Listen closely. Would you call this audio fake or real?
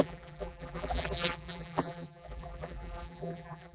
fake